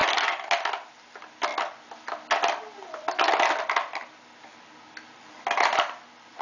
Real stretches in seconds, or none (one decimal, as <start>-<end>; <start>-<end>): 0.0-6.4